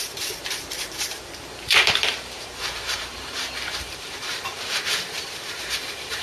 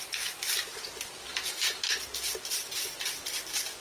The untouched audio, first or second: second